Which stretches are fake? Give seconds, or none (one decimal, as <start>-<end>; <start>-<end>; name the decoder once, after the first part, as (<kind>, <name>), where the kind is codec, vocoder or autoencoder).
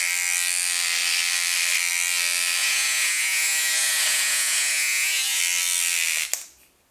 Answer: 2.6-5.4 (vocoder, Vocos)